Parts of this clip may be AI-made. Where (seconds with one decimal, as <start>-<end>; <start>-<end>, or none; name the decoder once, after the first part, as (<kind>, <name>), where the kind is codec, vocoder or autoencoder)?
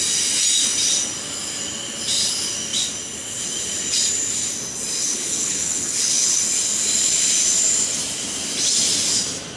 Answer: 5.0-6.4 (codec, HILCodec)